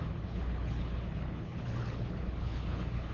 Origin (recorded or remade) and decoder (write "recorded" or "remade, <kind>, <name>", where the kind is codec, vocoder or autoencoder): remade, codec, HILCodec